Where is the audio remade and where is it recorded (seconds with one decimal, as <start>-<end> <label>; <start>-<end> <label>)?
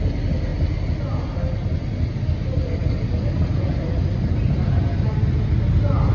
0.0-6.1 recorded